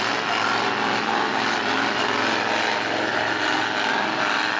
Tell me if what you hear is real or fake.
real